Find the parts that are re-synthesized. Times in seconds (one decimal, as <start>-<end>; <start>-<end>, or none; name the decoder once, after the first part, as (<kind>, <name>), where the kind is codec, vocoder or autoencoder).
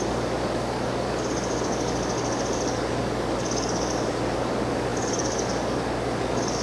0.0-6.6 (codec, DAC)